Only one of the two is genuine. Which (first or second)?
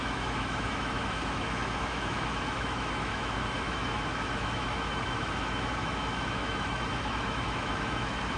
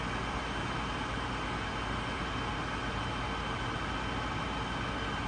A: second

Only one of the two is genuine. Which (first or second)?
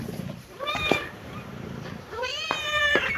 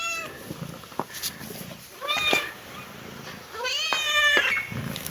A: second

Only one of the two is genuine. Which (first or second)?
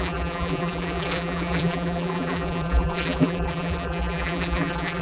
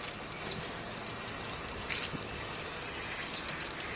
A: second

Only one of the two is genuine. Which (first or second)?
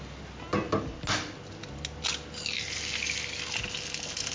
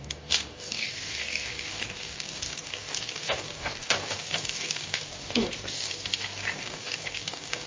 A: first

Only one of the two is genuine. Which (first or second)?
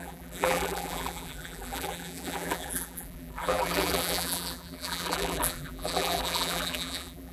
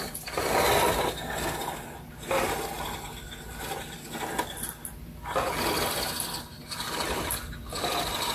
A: second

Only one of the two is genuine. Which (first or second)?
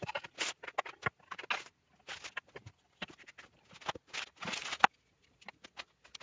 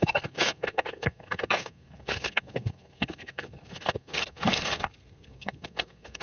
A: first